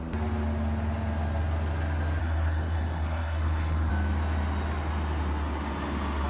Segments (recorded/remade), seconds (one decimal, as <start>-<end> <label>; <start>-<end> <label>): 0.0-2.2 recorded; 2.2-3.9 remade; 3.9-6.3 recorded